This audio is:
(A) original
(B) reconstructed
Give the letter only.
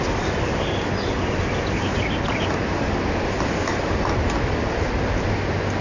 A